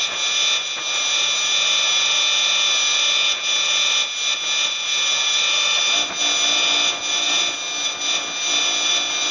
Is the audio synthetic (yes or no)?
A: no